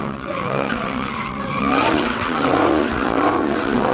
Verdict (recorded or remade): remade